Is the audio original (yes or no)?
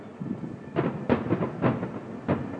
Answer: yes